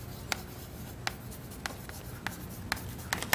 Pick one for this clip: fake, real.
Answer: real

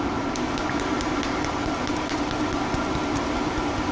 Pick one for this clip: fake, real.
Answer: real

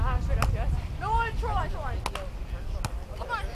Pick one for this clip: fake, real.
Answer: real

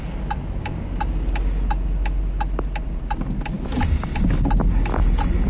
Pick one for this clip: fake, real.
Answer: real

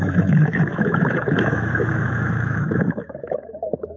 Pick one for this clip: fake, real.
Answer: fake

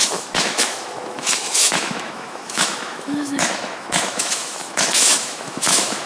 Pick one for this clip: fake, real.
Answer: fake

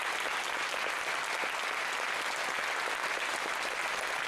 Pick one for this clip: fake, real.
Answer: real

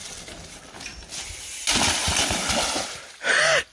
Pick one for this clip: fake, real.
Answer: real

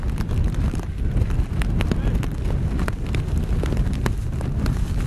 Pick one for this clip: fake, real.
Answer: real